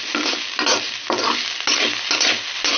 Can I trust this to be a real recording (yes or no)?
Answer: yes